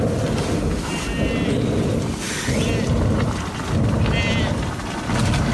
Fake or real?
real